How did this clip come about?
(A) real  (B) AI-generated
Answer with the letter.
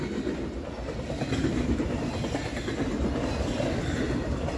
A